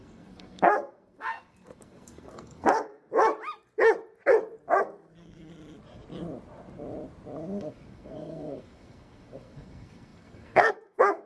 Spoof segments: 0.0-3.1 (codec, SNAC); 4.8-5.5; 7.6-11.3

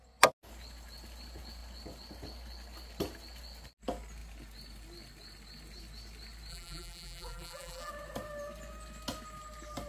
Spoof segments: 6.5-7.9 (vocoder, BigVGAN v2)

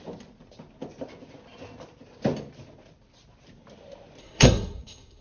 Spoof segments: 4.2-5.2 (codec, SNAC)

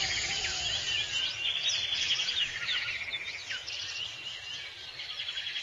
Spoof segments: none

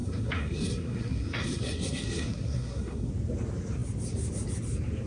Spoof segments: 0.0-3.1 (codec, SNAC)

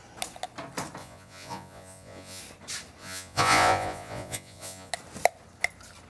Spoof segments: 1.0-2.4 (vocoder, Vocos); 3.0-4.9

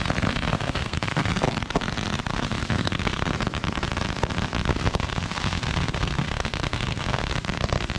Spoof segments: 0.5-1.3 (codec, SNAC); 2.3-3.3; 4.7-7.3